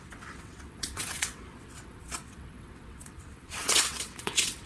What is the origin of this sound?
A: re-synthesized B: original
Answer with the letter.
A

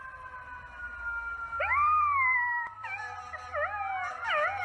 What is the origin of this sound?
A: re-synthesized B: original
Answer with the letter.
B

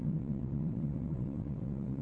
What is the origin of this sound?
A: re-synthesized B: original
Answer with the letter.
A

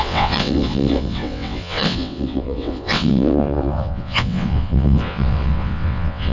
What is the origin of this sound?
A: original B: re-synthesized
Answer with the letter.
B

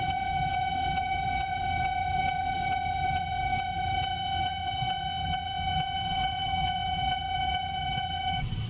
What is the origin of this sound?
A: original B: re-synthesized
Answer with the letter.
B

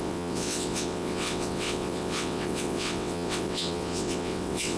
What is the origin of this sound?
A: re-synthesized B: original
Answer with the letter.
A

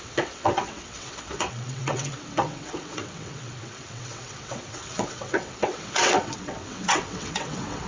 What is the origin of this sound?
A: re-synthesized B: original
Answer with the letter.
A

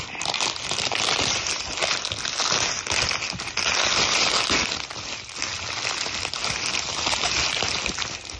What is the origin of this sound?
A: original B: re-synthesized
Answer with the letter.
A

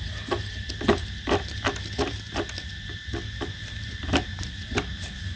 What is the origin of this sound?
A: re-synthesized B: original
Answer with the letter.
B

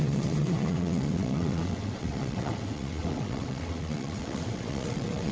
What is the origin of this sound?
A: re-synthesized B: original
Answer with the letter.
A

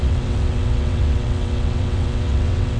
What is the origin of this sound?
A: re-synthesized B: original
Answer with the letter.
A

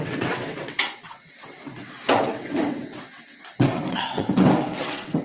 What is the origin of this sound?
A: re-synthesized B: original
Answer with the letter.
A